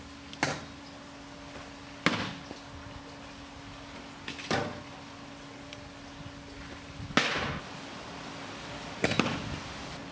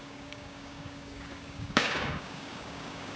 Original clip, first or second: first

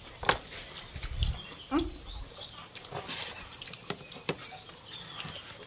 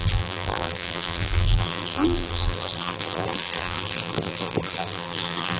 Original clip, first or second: first